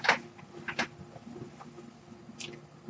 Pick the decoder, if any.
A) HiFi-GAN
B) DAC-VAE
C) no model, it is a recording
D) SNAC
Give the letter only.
C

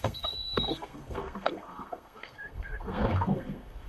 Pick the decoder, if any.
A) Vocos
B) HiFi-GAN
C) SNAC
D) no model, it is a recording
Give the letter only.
C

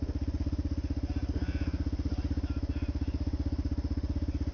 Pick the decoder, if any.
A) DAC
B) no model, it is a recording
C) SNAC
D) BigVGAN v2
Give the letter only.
B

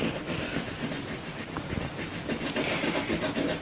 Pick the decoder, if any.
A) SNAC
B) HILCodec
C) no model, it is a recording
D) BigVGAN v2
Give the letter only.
C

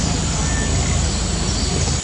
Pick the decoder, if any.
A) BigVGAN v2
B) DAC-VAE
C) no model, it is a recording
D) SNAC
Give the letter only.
C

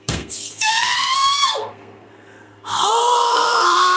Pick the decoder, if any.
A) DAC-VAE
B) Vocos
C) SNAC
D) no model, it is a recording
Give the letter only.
C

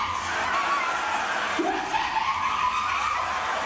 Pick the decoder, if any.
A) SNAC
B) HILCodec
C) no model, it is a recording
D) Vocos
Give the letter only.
C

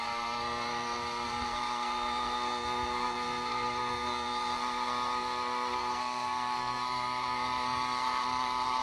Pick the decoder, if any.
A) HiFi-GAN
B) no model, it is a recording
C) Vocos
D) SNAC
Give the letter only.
D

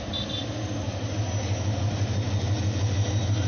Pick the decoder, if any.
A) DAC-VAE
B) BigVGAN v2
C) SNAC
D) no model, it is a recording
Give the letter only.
D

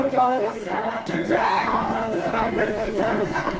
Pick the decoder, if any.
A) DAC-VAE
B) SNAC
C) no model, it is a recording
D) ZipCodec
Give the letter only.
B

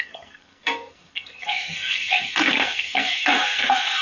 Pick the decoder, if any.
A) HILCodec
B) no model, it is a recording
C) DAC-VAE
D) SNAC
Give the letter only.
D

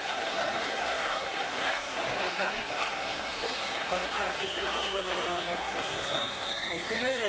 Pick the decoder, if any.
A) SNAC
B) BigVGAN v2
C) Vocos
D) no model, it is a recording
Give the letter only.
A